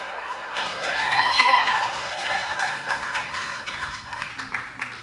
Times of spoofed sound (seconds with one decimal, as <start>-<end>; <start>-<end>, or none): 0.0-4.3